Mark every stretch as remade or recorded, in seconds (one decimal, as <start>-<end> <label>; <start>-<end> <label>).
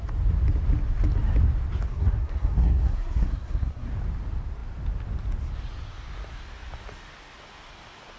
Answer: 0.0-1.9 recorded; 1.9-3.9 remade; 3.9-8.2 recorded